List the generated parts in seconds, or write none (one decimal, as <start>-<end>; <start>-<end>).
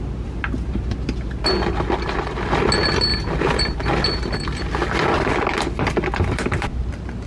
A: 3.1-3.9